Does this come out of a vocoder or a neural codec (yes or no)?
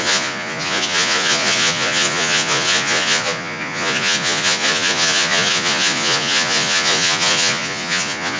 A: yes